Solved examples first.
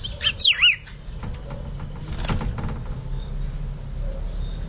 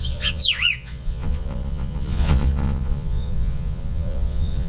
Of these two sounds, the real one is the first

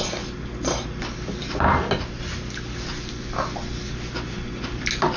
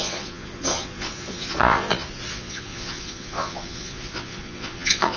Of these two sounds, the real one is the first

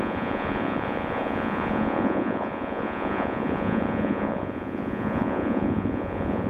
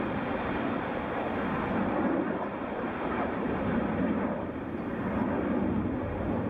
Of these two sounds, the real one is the second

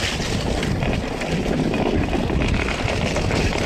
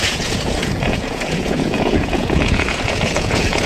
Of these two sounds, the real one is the first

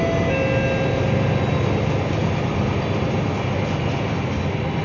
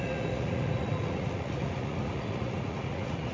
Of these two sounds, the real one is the first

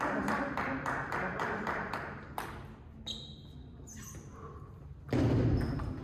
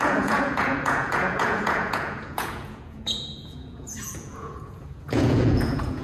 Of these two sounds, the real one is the first